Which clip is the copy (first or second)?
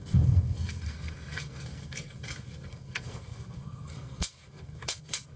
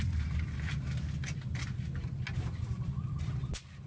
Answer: first